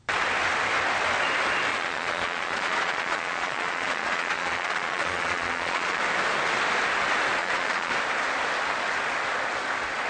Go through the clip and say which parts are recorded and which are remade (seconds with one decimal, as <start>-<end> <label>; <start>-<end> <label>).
0.0-1.7 recorded; 1.7-6.0 remade; 6.0-7.4 recorded; 7.4-7.9 remade; 7.9-10.1 recorded